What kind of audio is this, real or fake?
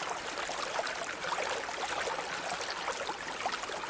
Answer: real